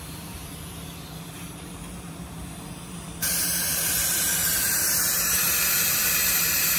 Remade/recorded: remade